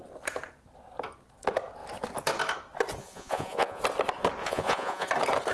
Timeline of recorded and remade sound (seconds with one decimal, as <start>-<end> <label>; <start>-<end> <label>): 0.0-3.0 recorded; 3.0-3.8 remade; 3.8-4.4 recorded; 4.4-5.1 remade; 5.1-5.5 recorded